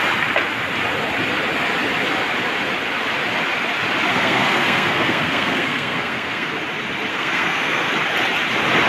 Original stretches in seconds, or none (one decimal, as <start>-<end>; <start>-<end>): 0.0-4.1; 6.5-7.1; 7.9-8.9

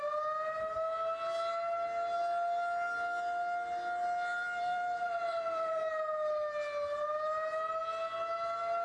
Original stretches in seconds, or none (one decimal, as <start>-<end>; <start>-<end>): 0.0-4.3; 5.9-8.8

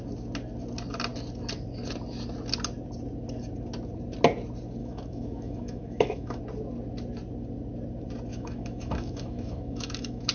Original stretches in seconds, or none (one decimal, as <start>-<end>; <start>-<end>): 0.0-4.8; 6.4-8.3